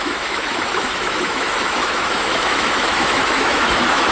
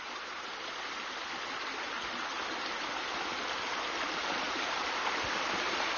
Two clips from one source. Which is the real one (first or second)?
second